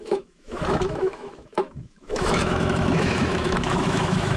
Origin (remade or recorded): remade